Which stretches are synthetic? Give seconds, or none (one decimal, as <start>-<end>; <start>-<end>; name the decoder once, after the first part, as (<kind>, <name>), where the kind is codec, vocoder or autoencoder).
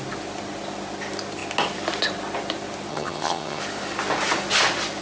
2.9-3.6 (vocoder, HiFi-GAN)